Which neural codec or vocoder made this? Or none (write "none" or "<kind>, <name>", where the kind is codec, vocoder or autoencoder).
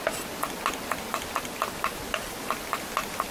none